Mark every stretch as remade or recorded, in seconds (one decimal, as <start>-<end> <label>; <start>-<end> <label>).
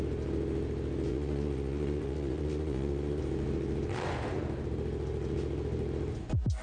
0.0-1.1 recorded; 1.1-3.2 remade; 3.2-6.6 recorded